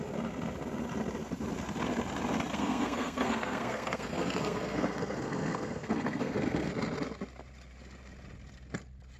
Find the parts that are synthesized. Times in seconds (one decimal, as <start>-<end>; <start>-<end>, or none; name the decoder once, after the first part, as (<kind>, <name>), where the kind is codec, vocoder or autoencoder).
2.5-6.7 (codec, SNAC)